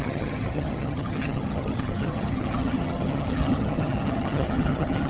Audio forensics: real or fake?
fake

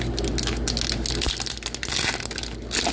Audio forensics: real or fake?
real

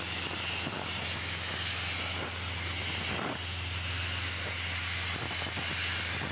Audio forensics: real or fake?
real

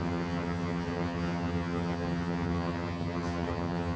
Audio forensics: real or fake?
fake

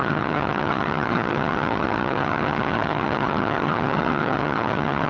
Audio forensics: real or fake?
fake